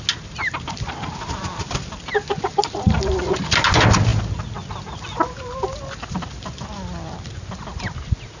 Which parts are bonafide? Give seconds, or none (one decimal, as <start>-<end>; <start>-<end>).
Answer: 0.0-8.4